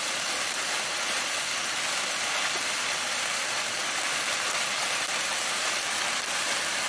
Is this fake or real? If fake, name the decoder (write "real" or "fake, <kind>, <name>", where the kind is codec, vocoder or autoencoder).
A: real